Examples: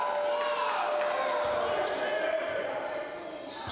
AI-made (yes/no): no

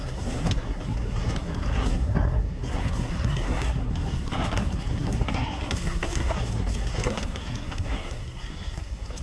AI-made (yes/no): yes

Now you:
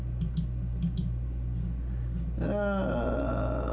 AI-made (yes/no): no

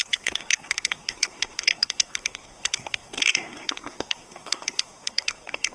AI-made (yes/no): yes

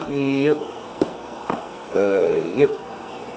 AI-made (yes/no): yes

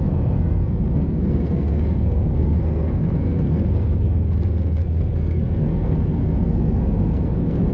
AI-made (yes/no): yes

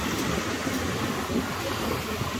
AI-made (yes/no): no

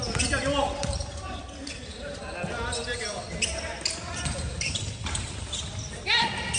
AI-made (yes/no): no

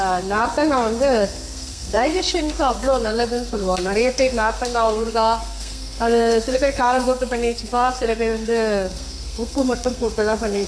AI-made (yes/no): yes